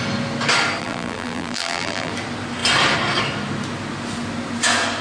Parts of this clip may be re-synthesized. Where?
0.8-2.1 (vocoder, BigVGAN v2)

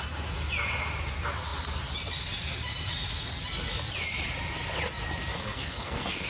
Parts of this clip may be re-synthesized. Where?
5.3-6.3 (codec, SNAC)

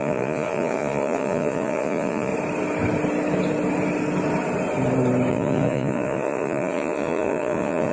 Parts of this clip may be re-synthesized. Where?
0.0-2.3 (vocoder, Vocos); 5.3-7.9

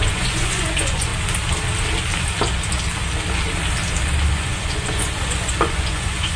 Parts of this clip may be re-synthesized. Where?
0.0-1.1 (vocoder, Vocos); 4.3-6.4

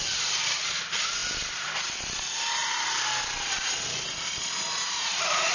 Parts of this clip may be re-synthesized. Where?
none

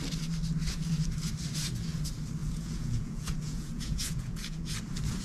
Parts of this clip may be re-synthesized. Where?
2.4-4.8 (vocoder, Vocos)